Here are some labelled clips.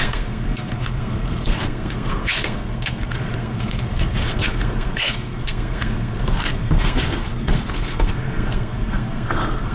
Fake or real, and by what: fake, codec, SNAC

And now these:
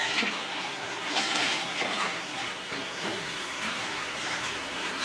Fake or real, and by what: fake, codec, SNAC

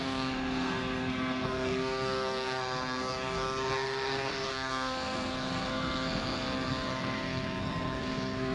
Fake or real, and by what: fake, codec, SNAC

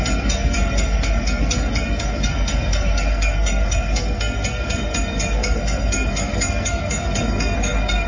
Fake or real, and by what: fake, codec, SNAC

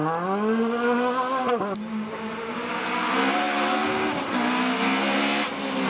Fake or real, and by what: real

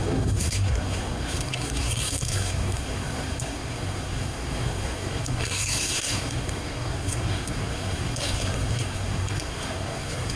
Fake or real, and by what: fake, codec, SNAC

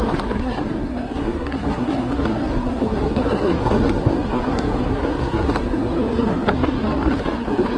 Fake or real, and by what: fake, codec, SNAC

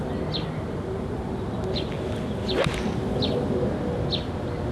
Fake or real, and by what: real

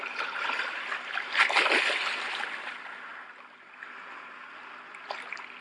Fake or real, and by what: real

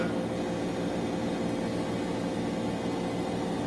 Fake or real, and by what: real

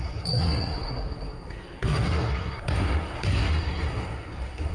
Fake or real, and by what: fake, codec, SNAC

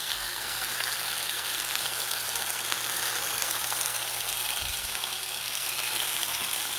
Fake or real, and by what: fake, codec, SNAC